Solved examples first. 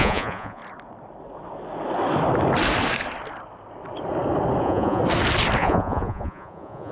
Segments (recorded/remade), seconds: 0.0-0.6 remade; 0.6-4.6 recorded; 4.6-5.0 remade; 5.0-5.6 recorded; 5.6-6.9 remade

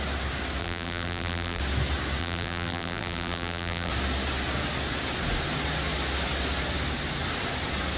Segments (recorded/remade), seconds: 0.0-0.6 recorded; 0.6-1.6 remade; 1.6-2.2 recorded; 2.2-3.9 remade; 3.9-8.0 recorded

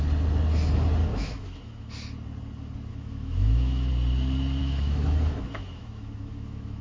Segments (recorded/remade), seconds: 0.0-1.1 recorded; 1.1-1.9 remade; 1.9-2.9 recorded; 2.9-3.9 remade; 3.9-4.6 recorded; 4.6-6.8 remade

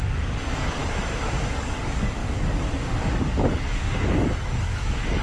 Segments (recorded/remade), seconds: 0.0-0.8 remade; 0.8-1.5 recorded; 1.5-5.2 remade

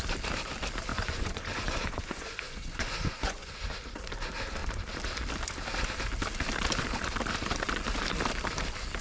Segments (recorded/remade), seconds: 0.0-0.9 recorded; 0.9-3.7 remade; 3.7-9.0 recorded

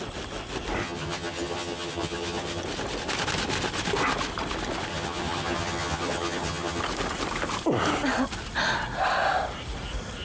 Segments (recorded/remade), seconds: 0.0-0.8 recorded; 0.8-2.6 remade; 2.6-4.9 recorded; 4.9-6.8 remade; 6.8-10.2 recorded